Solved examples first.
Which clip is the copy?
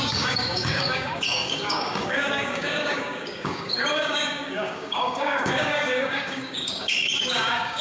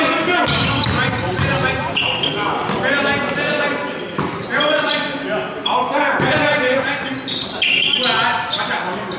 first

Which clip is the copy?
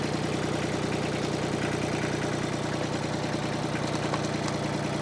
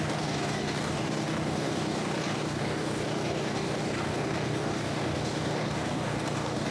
second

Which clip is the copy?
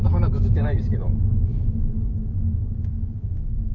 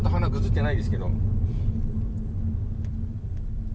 first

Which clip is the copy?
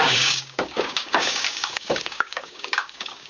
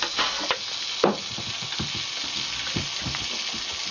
first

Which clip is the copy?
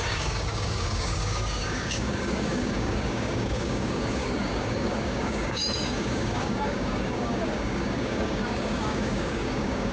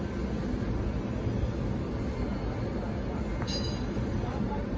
first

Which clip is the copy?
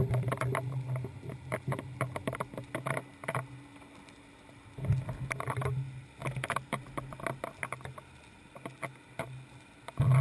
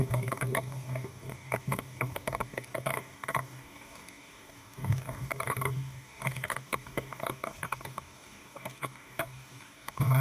second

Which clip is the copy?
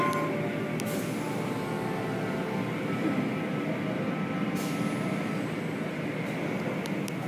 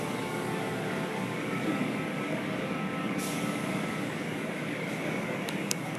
second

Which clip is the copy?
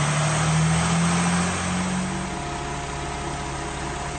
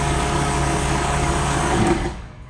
second